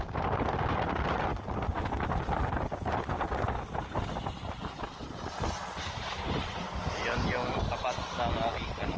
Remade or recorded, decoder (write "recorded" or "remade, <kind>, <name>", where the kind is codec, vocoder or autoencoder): recorded